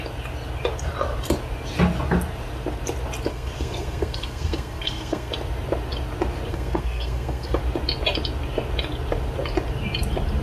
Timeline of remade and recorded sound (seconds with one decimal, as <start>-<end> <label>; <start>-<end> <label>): 0.0-3.3 recorded; 3.3-5.3 remade; 5.3-6.5 recorded; 6.5-7.6 remade; 7.6-10.4 recorded